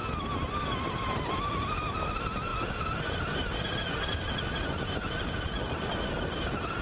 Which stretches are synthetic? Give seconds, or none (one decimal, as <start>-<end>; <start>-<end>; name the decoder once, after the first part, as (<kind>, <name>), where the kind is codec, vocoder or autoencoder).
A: none